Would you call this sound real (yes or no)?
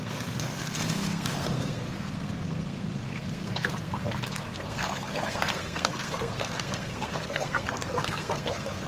no